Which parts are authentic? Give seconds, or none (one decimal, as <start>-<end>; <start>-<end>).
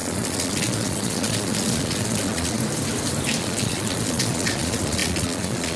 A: 2.6-3.4